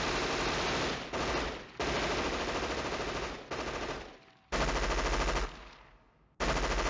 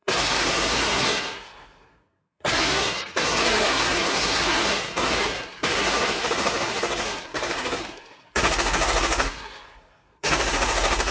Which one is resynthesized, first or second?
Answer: second